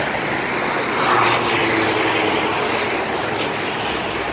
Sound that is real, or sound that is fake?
real